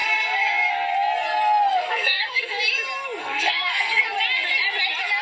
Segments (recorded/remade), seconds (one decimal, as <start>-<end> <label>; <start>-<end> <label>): 0.0-0.7 remade; 0.7-1.7 recorded; 1.7-2.6 remade; 2.6-3.2 recorded; 3.2-4.0 remade; 4.0-5.2 recorded